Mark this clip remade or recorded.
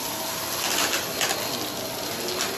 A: recorded